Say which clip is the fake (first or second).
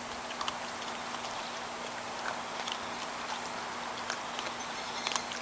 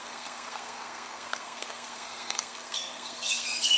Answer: second